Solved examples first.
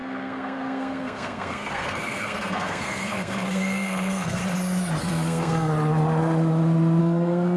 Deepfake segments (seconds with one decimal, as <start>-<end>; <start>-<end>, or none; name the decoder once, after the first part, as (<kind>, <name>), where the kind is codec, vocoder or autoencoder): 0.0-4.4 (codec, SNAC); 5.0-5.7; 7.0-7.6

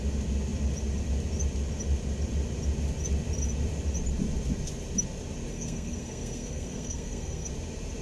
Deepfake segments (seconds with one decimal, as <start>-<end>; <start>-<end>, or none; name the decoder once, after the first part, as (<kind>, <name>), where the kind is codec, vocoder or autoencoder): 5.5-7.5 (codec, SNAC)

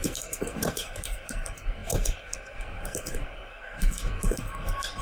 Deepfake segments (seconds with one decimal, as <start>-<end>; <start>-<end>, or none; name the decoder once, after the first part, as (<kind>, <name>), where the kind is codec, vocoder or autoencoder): 0.0-5.0 (codec, SNAC)

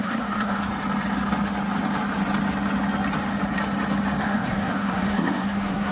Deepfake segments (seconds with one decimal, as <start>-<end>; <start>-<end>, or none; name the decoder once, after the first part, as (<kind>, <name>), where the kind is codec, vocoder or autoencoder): 0.0-0.7 (codec, SNAC); 4.2-5.9

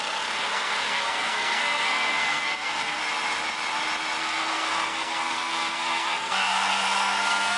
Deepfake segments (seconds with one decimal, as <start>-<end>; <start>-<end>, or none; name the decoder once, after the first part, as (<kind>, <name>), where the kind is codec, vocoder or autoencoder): 0.0-3.0 (codec, SNAC); 4.2-7.6

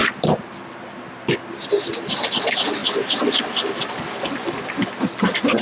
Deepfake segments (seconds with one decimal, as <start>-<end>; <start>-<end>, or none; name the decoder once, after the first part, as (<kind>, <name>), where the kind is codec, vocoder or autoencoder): none